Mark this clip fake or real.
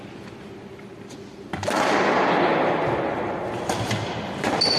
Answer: real